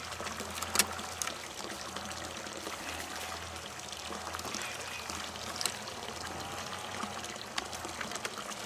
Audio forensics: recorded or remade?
recorded